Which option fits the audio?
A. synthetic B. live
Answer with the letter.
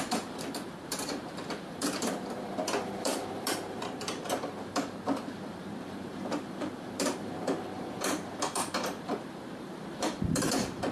A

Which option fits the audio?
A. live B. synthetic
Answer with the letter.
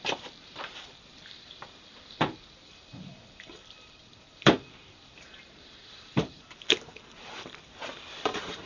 B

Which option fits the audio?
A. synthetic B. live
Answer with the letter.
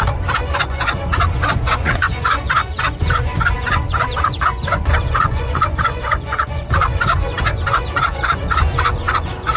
A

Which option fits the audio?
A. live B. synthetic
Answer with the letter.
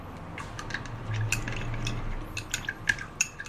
A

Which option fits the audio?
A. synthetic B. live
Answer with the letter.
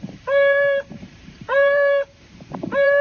A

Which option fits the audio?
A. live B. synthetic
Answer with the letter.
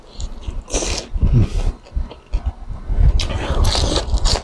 A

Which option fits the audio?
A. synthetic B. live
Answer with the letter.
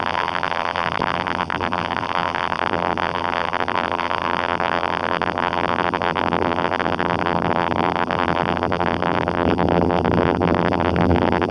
A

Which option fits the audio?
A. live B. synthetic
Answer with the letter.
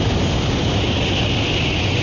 A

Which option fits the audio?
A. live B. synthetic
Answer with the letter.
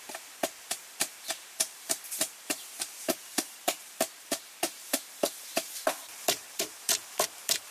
B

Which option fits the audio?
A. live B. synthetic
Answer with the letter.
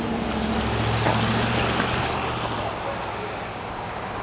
A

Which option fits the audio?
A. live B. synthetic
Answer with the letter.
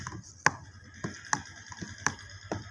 A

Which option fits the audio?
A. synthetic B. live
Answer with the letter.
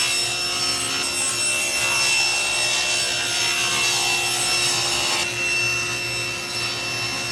B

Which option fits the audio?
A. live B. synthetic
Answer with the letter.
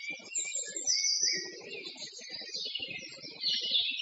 A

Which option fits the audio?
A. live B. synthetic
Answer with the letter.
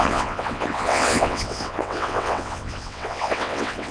B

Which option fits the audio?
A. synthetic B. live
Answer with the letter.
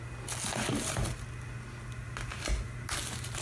B